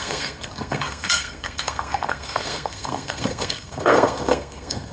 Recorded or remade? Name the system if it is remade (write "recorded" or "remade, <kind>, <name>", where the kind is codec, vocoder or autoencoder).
remade, codec, SNAC